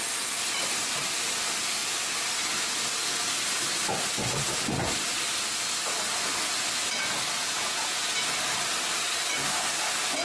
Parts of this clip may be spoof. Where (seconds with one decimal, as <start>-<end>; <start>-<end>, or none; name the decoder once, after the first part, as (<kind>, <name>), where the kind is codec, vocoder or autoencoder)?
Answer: 7.4-8.1 (vocoder, Vocos)